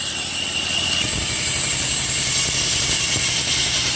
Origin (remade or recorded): recorded